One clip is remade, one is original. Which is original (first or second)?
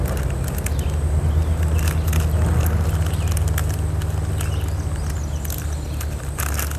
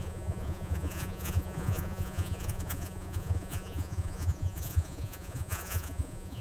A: first